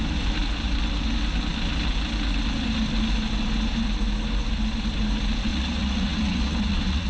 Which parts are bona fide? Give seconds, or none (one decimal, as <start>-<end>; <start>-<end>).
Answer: 0.0-5.5